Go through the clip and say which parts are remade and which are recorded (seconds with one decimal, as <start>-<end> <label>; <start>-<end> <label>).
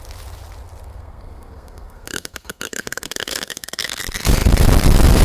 0.0-0.9 recorded; 0.9-4.0 remade; 4.0-5.2 recorded